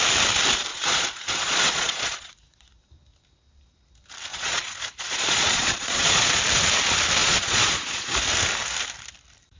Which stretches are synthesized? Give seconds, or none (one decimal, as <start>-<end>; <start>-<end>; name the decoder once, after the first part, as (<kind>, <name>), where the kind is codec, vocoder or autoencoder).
0.7-2.8 (vocoder, Vocos); 4.3-6.4; 7.2-8.1